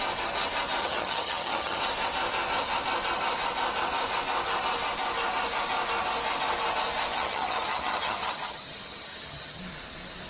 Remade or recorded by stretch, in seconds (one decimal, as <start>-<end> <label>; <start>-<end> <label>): 0.0-0.8 recorded; 0.8-1.8 remade; 1.8-7.1 recorded; 7.1-9.6 remade; 9.6-10.3 recorded